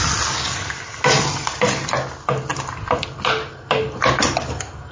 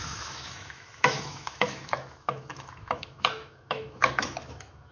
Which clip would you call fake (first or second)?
second